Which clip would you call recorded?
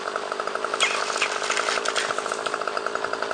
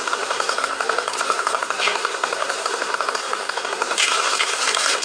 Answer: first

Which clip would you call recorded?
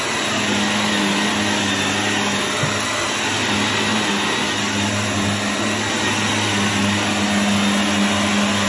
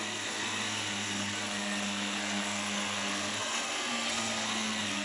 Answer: first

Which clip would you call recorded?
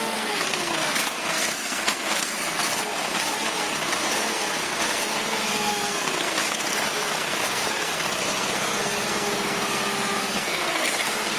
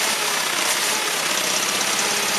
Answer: second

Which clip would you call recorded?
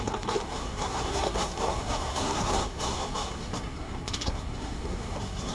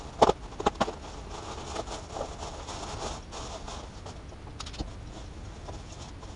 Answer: second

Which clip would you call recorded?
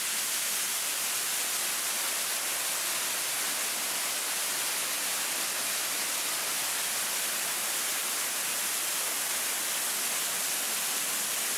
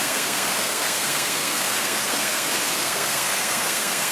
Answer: first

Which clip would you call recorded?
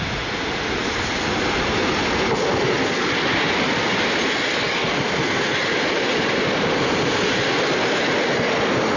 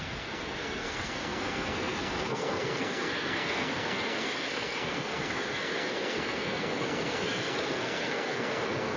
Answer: first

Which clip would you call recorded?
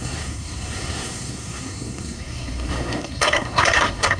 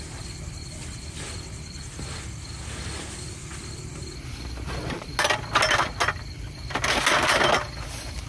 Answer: second